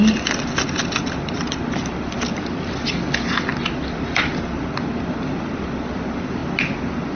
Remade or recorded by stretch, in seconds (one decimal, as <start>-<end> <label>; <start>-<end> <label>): 0.0-0.8 recorded; 0.8-1.6 remade; 1.6-3.5 recorded; 3.5-4.2 remade; 4.2-7.2 recorded